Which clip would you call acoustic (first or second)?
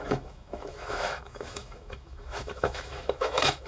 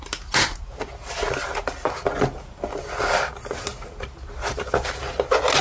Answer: second